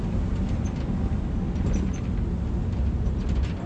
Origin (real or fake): real